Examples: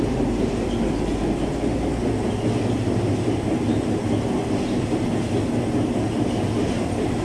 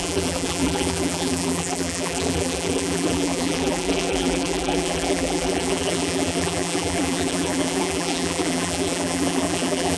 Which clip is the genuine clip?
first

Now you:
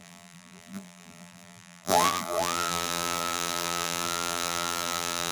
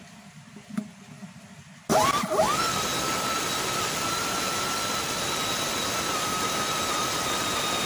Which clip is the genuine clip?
second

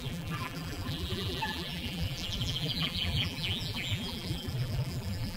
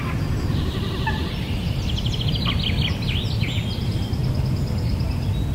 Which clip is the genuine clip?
second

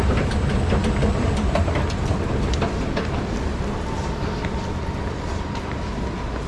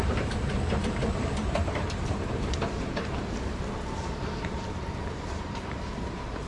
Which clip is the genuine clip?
first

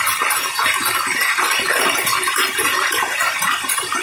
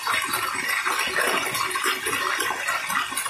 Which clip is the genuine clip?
second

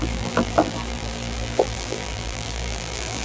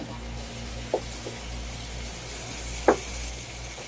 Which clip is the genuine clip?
second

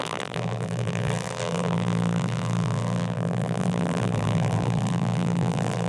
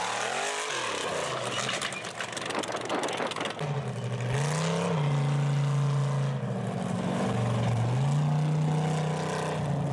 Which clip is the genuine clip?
second